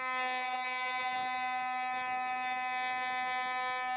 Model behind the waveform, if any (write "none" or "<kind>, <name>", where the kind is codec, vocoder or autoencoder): none